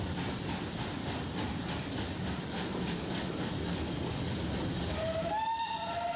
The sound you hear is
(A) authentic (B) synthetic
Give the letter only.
A